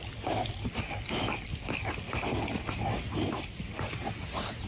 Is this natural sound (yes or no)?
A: yes